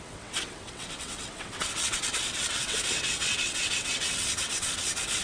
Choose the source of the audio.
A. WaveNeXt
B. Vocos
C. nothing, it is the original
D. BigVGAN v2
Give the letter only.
A